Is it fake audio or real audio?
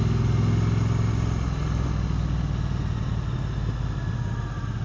real